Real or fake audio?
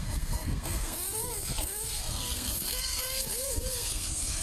fake